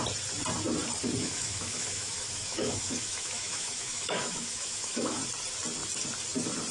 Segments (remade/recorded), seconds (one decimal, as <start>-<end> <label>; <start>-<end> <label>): 0.0-1.2 recorded; 1.2-5.2 remade; 5.2-6.7 recorded

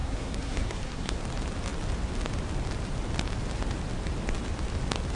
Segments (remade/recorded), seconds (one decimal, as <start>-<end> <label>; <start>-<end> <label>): 0.0-1.2 remade; 1.2-5.2 recorded

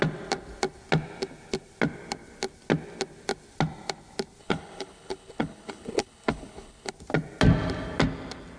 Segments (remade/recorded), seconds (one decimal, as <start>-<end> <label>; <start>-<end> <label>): 0.0-4.4 recorded; 4.4-6.9 remade; 6.9-8.6 recorded

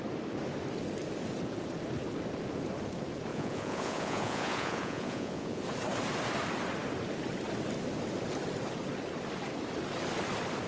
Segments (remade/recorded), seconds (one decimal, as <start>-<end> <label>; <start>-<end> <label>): 0.0-3.3 recorded; 3.3-5.6 remade; 5.6-10.7 recorded

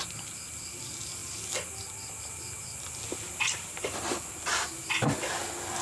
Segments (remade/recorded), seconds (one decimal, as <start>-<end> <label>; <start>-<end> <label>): 0.0-5.8 recorded